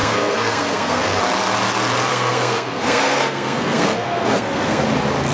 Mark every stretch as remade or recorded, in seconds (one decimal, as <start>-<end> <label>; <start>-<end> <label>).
0.0-1.2 remade; 1.2-2.1 recorded; 2.1-4.8 remade; 4.8-5.3 recorded

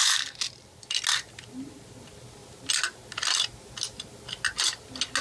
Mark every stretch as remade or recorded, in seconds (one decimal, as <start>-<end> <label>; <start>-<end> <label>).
0.0-5.2 recorded